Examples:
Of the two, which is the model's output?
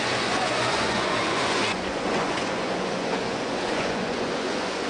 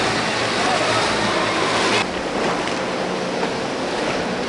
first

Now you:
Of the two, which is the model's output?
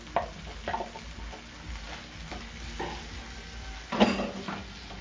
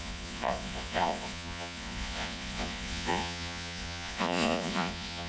second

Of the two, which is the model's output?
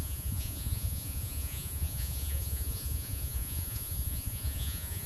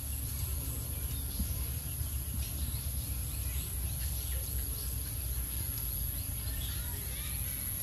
first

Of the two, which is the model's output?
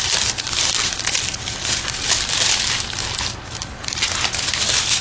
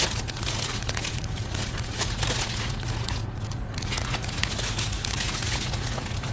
second